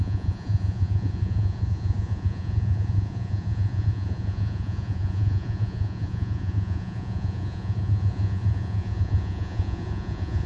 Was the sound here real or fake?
fake